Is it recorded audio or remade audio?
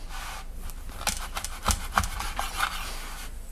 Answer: recorded